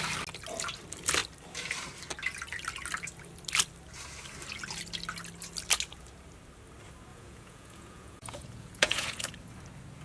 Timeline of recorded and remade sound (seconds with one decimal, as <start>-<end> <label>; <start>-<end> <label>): 0.0-7.1 recorded; 7.1-9.3 remade; 9.3-10.0 recorded